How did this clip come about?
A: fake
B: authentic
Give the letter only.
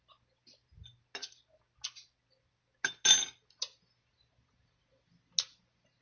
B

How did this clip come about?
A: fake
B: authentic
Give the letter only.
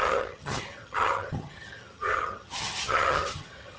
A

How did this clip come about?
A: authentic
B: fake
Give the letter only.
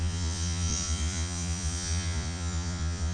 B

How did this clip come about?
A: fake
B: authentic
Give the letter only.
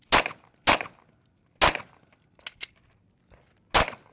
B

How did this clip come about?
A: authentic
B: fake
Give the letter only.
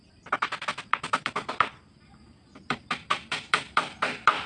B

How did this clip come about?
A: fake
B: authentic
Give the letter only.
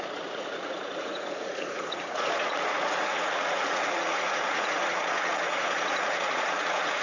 A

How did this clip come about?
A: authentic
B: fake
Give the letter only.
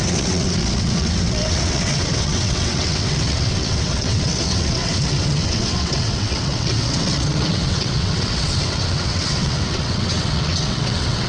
B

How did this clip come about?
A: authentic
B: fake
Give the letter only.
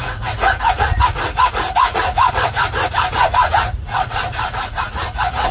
B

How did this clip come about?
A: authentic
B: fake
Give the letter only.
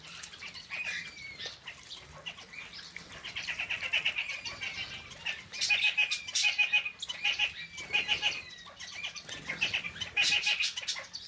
B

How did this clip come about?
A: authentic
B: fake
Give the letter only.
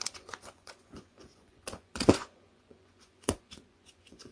B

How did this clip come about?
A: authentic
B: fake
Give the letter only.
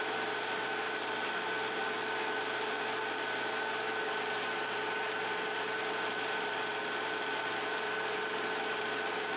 A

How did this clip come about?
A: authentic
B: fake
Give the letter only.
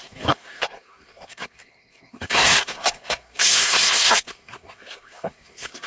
B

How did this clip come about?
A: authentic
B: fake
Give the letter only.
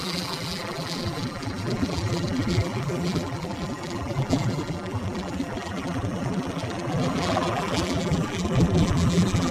B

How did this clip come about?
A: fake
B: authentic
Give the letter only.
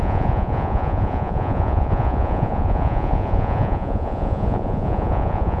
A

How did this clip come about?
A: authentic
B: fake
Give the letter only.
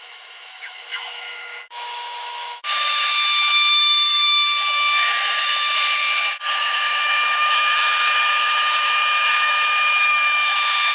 B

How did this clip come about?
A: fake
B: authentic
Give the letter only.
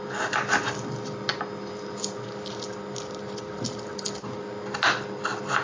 B